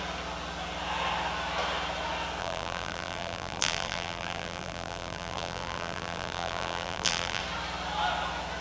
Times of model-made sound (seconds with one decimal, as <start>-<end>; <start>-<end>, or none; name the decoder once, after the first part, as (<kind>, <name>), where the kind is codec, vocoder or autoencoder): 2.4-7.4 (vocoder, BigVGAN v2)